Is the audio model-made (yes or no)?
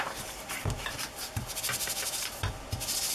no